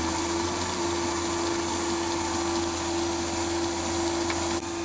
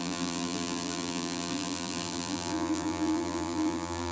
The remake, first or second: second